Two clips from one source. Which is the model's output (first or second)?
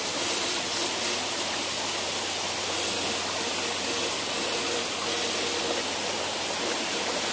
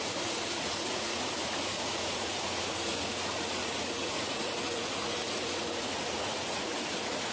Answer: second